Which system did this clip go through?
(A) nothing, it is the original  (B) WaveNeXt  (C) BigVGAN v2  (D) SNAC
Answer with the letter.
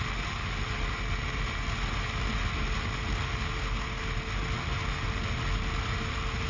A